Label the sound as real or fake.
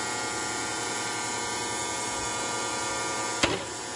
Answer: real